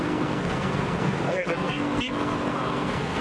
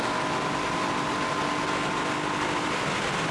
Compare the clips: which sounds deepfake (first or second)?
first